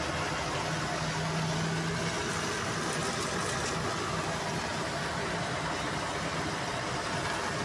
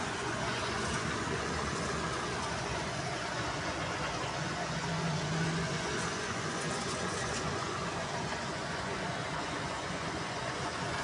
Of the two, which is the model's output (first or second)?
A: second